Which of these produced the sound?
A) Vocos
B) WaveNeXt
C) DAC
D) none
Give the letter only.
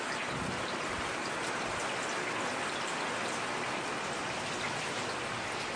D